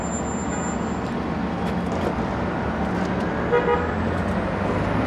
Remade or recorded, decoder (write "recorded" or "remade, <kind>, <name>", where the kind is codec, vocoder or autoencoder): recorded